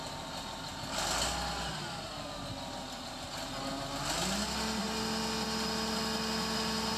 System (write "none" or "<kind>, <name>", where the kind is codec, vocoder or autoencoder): none